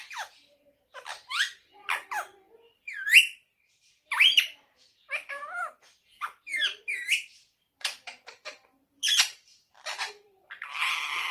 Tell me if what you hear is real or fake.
fake